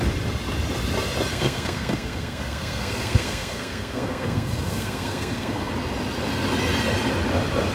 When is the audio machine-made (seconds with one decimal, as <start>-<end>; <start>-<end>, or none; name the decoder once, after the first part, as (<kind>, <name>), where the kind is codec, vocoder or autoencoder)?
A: 1.3-5.7 (codec, SNAC)